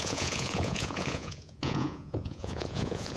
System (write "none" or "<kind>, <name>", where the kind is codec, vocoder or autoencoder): vocoder, Vocos